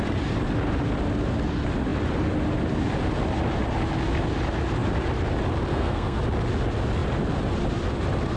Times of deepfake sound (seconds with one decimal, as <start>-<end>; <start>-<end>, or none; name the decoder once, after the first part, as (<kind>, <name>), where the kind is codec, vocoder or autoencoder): 5.7-6.2 (codec, SNAC)